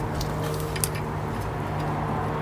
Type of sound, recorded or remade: recorded